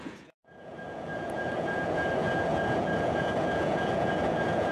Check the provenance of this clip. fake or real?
fake